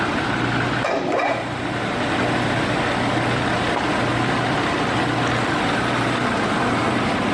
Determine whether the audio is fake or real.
real